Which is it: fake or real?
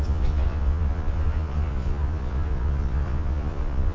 fake